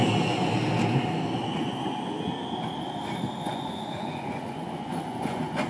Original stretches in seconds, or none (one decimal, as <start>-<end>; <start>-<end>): 0.0-3.4